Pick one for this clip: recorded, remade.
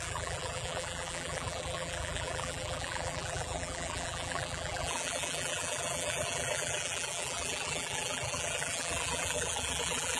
remade